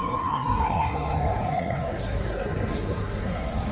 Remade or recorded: remade